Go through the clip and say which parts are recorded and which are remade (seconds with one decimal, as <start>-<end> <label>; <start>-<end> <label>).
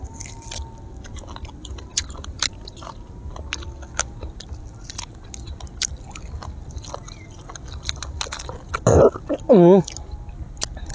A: 0.0-1.9 recorded; 1.9-3.2 remade; 3.2-10.9 recorded